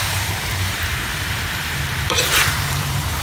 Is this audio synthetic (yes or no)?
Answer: yes